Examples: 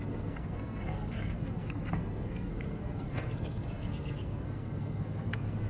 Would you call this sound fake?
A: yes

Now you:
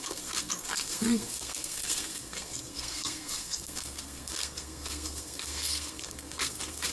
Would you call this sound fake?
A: yes